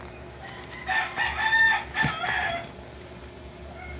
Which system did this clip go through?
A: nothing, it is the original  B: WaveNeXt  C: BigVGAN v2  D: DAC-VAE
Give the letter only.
A